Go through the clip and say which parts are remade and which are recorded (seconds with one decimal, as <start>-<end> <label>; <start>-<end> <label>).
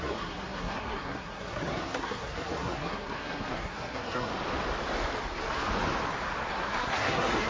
0.0-4.3 remade; 4.3-6.5 recorded; 6.5-7.5 remade